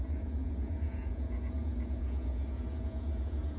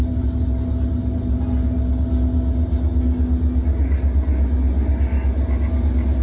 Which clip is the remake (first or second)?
first